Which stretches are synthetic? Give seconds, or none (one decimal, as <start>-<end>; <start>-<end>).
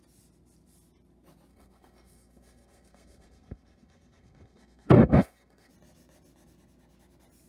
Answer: 1.5-5.7